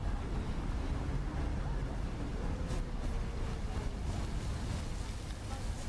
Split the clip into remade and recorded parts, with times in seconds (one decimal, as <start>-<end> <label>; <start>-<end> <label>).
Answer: 0.0-2.3 remade; 2.3-5.9 recorded